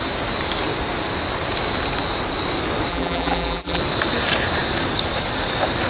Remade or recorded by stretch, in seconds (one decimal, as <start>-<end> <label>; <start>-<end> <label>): 0.0-2.9 recorded; 2.9-3.8 remade; 3.8-5.9 recorded